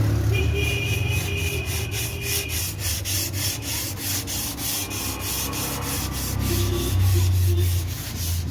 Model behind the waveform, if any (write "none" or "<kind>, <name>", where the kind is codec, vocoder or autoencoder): none